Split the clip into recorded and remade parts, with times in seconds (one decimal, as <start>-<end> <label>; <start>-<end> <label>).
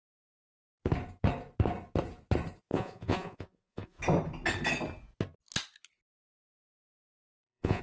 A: 0.0-2.7 recorded; 2.7-4.0 remade; 4.0-6.9 recorded; 6.9-7.8 remade